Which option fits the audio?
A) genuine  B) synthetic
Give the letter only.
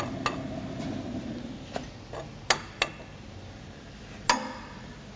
A